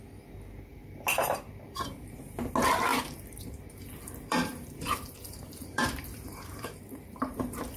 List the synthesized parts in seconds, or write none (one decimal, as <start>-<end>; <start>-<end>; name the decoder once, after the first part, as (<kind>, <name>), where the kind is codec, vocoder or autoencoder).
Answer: 0.7-2.2 (vocoder, BigVGAN v2); 2.9-7.8